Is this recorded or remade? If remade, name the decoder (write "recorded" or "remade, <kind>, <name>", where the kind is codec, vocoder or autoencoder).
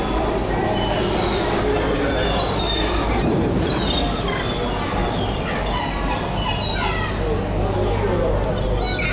recorded